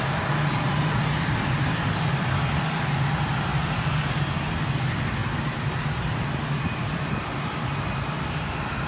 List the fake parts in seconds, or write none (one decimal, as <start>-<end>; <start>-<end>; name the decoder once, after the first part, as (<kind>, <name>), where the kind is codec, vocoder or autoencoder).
none